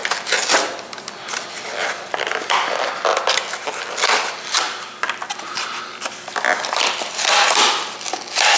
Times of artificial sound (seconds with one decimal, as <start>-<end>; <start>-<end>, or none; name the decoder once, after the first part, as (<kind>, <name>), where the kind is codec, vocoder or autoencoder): none